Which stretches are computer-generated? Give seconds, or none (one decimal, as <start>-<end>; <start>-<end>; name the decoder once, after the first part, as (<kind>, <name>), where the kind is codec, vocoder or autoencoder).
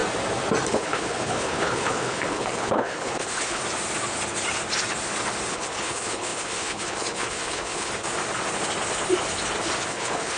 0.7-3.6 (codec, HILCodec); 5.5-7.9; 9.9-10.4